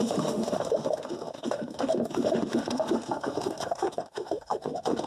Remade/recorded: remade